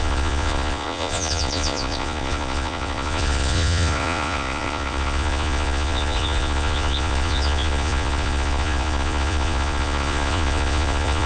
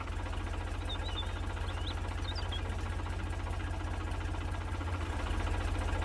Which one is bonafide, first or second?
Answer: second